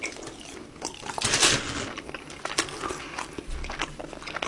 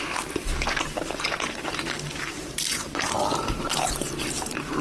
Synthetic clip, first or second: second